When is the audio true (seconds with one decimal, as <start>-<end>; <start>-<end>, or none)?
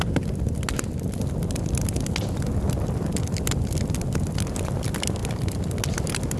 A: 0.0-6.4